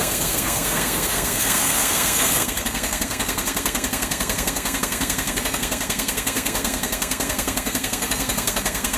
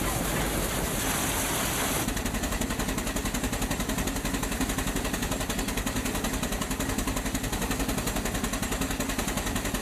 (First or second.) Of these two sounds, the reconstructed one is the first